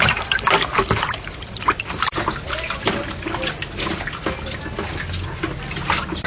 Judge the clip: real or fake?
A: real